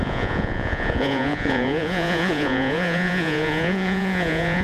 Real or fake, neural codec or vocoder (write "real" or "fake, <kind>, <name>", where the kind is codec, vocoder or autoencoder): fake, vocoder, Vocos